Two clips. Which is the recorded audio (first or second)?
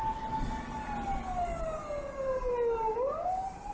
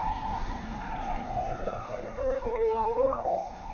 first